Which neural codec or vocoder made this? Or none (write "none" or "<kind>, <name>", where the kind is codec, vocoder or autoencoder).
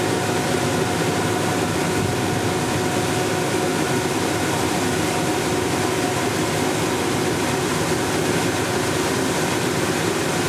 none